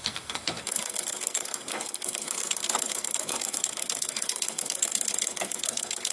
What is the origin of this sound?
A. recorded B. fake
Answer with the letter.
B